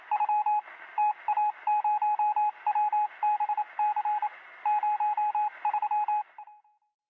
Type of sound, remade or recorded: recorded